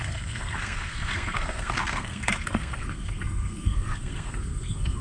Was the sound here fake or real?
fake